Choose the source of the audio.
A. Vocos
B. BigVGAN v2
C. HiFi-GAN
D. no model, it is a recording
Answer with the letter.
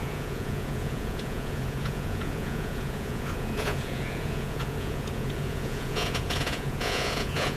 A